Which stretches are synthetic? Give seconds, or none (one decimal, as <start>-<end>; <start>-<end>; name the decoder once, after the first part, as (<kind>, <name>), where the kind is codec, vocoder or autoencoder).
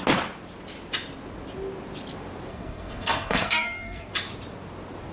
2.5-4.1 (codec, SNAC)